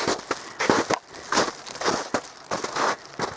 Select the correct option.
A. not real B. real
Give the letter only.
B